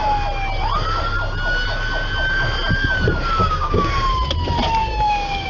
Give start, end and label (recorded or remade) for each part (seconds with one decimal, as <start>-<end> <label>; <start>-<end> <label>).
0.0-3.4 recorded; 3.4-3.9 remade; 3.9-4.8 recorded; 4.8-5.5 remade